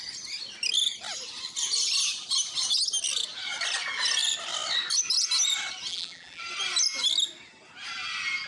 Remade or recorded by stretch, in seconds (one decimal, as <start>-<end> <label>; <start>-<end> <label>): 0.0-5.9 recorded; 5.9-6.4 remade; 6.4-8.5 recorded